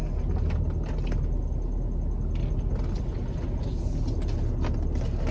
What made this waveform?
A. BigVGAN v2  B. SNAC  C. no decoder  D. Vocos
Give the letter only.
C